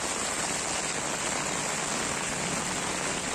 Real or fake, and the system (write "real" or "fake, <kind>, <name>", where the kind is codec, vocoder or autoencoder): real